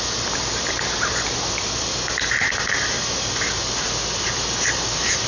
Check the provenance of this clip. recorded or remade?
recorded